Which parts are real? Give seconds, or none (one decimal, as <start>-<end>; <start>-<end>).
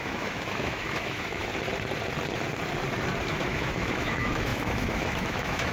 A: 1.5-3.3